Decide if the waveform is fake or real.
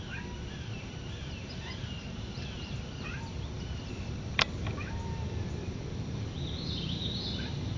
fake